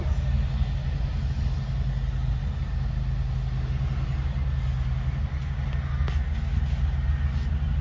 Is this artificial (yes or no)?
no